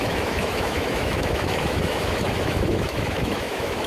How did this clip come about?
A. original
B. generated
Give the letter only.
B